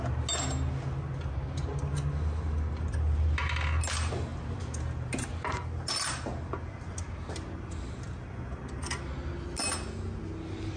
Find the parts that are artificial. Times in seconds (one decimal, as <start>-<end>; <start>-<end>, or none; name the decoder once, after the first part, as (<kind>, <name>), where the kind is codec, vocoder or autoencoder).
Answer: none